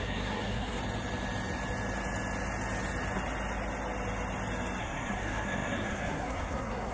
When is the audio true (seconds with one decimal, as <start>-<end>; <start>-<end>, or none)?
0.8-4.8